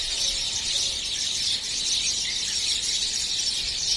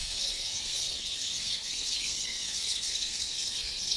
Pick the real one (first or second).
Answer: first